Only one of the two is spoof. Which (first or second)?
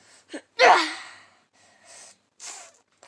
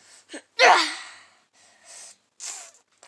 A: first